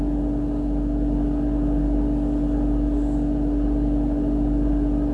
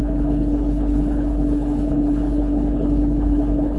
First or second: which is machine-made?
second